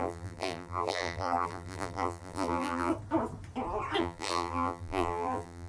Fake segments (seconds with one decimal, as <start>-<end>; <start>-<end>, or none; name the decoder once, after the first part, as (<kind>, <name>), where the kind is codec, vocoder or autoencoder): 0.0-2.9 (vocoder, BigVGAN v2); 4.0-5.7